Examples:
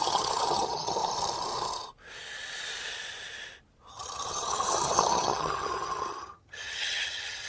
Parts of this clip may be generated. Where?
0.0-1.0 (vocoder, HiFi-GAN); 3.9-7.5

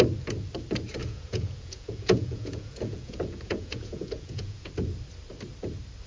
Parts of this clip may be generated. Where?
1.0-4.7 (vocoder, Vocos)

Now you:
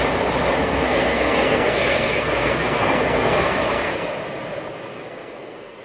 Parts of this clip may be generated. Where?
0.6-4.1 (codec, SNAC); 4.9-5.8

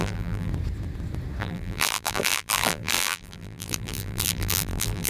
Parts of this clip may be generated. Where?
0.0-0.5 (vocoder, BigVGAN v2); 1.4-5.1

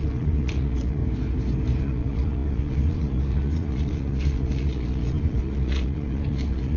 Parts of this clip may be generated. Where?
0.0-1.0 (vocoder, Vocos); 1.8-6.8

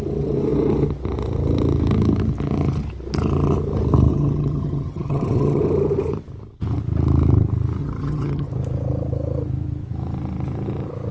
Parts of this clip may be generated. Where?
4.1-5.6 (vocoder, HiFi-GAN); 7.8-8.5

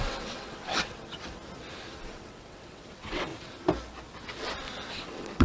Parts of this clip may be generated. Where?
0.0-1.4 (vocoder, WaveNeXt); 2.1-3.3; 4.9-5.4